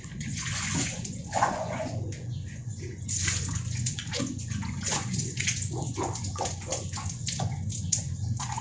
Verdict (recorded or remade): remade